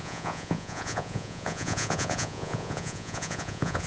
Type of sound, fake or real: fake